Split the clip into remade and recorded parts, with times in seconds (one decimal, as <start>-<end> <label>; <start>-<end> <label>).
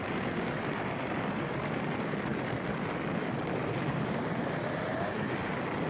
0.0-5.9 recorded